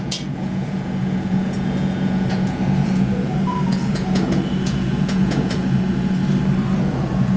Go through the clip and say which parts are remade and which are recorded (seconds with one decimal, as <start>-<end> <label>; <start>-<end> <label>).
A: 0.0-6.2 remade; 6.2-6.8 recorded; 6.8-7.4 remade